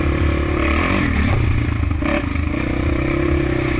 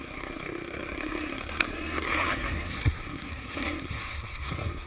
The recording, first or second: first